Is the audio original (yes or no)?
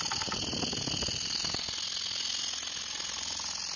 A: yes